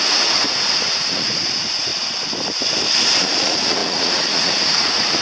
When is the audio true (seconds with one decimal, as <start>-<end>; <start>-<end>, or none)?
1.9-3.2